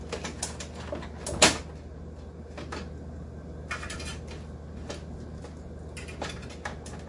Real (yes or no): yes